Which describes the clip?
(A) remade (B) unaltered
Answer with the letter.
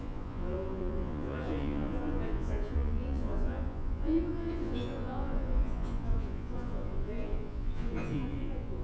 A